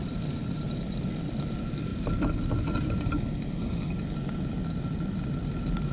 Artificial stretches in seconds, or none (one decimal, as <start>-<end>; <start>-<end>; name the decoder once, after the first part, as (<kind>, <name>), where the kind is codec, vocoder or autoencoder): none